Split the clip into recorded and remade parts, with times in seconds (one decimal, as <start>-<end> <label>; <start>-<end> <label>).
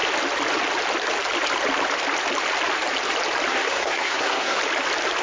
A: 0.0-3.5 recorded; 3.5-4.6 remade; 4.6-5.2 recorded